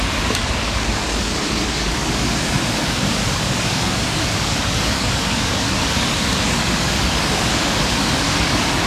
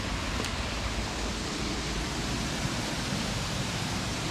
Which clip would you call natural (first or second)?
second